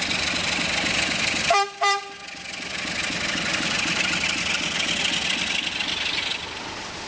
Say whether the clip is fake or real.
real